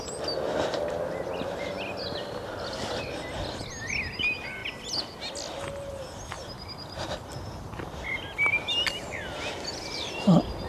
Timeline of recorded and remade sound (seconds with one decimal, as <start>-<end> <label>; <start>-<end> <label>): 0.0-10.7 recorded